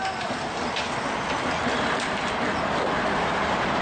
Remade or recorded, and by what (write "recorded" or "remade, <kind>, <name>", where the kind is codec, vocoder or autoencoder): recorded